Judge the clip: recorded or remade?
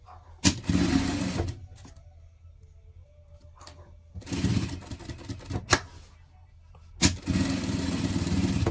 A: recorded